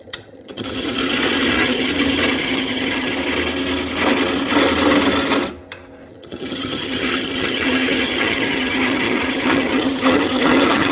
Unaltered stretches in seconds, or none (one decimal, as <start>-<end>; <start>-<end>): 1.0-1.5; 1.9-2.4; 3.1-6.1